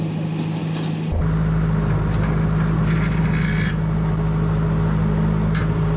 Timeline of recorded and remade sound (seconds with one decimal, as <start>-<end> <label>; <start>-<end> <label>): 0.0-6.0 recorded

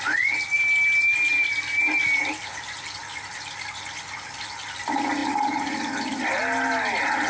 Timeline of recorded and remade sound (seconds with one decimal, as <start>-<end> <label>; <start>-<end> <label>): 0.0-2.2 recorded; 2.2-3.0 remade; 3.0-5.2 recorded; 5.2-6.4 remade; 6.4-7.3 recorded

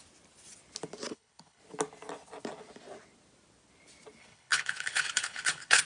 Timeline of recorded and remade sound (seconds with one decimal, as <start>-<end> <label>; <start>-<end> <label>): 0.0-1.1 recorded; 1.1-1.6 remade; 1.6-4.2 recorded; 4.2-5.8 remade

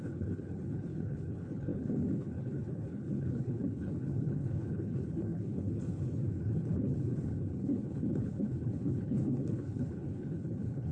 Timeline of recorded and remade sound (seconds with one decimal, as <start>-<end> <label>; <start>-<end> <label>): 0.0-10.9 remade